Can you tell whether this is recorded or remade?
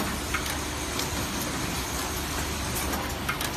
recorded